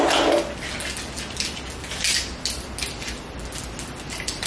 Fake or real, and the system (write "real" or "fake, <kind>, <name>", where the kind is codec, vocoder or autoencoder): real